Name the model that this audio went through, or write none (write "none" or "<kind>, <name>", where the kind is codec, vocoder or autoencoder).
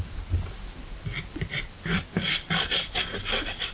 none